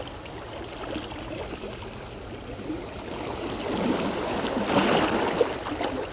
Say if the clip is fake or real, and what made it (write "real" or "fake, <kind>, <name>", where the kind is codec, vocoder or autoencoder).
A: real